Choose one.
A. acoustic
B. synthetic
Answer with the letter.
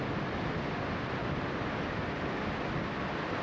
A